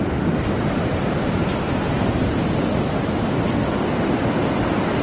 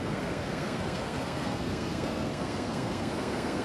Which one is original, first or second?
first